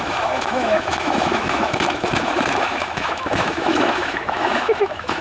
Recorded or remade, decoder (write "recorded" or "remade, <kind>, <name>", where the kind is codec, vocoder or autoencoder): remade, autoencoder, DAC-VAE